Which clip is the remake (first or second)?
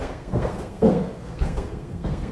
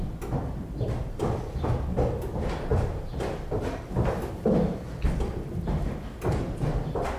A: first